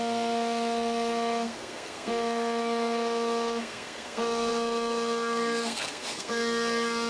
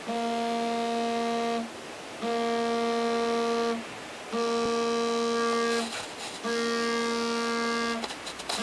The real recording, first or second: second